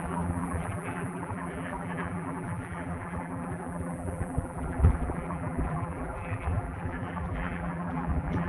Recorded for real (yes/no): no